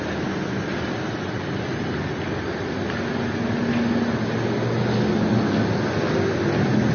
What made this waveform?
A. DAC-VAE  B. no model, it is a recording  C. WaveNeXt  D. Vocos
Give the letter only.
B